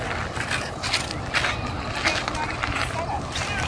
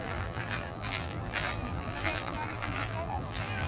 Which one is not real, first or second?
second